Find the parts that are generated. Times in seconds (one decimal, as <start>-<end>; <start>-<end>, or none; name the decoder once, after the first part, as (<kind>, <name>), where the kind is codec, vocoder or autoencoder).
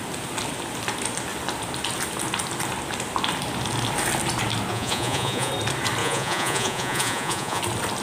4.7-5.5 (vocoder, Vocos); 6.0-7.6